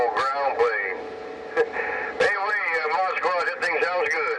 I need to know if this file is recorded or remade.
recorded